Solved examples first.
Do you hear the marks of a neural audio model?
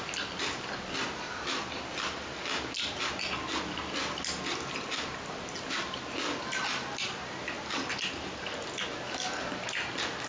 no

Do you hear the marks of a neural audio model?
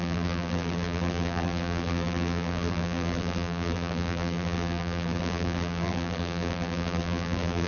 yes